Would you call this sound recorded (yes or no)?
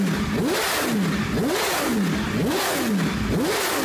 yes